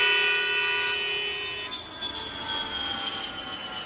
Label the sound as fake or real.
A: real